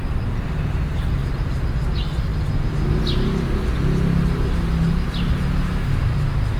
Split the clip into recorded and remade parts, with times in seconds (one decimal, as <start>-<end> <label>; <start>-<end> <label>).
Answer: 0.0-6.6 recorded